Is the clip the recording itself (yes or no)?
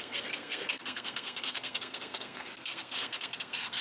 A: no